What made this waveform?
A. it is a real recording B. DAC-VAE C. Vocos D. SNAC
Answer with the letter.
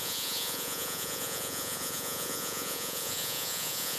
C